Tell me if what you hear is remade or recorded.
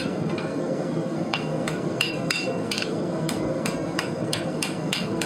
remade